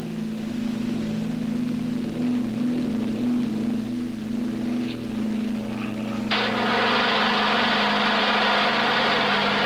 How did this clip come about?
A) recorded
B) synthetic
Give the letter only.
A